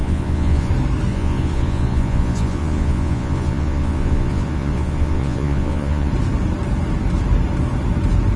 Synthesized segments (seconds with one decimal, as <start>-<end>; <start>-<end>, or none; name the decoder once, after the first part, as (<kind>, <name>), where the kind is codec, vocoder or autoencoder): 0.0-0.7 (vocoder, Vocos); 1.1-6.1